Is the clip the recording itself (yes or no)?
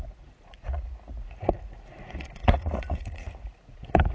no